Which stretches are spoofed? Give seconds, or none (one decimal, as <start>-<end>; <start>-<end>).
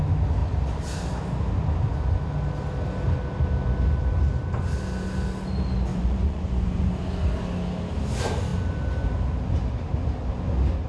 5.9-6.9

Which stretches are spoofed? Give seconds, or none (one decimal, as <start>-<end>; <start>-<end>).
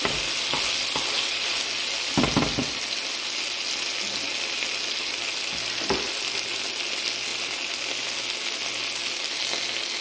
none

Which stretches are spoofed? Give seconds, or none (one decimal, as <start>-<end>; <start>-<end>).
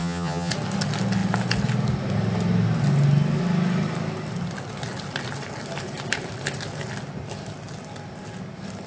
0.0-0.5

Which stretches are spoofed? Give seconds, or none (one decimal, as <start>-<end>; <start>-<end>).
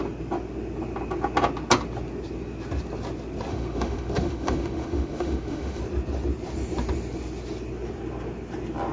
3.5-5.8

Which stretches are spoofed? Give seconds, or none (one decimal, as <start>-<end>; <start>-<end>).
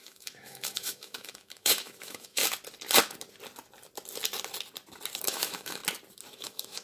0.0-2.4; 5.2-5.8; 6.3-6.8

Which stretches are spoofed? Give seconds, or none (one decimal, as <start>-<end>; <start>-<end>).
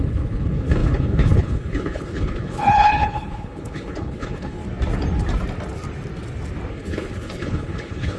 0.0-4.6; 6.7-8.2